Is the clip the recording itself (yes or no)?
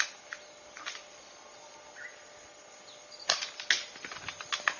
yes